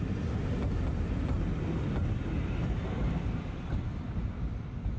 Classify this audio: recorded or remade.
recorded